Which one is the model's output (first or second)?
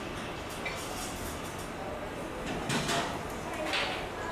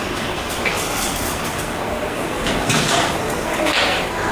second